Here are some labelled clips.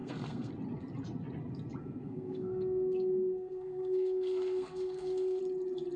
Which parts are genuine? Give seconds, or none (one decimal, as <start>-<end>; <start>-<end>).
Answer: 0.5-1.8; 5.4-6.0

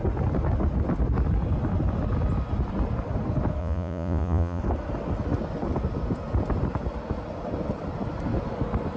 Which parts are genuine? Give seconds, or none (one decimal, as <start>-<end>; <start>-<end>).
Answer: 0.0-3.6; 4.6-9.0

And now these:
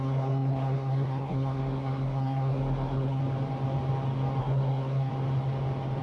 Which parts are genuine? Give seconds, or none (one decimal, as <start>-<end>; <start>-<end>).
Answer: 3.2-4.4; 5.1-6.0

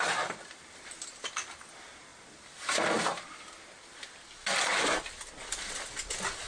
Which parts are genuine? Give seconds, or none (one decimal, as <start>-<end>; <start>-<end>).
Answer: 0.0-6.5

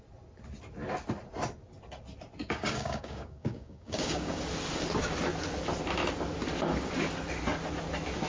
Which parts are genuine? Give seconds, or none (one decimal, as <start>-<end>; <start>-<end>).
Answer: 0.0-2.4; 4.4-8.3